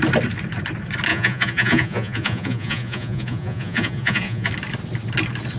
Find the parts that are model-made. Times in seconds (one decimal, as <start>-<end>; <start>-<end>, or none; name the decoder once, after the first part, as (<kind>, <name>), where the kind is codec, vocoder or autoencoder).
1.1-4.5 (vocoder, Vocos)